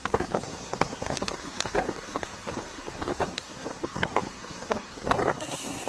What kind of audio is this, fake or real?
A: fake